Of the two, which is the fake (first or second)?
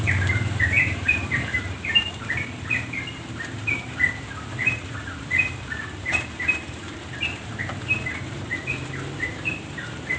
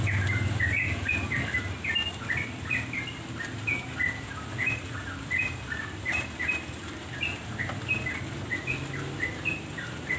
first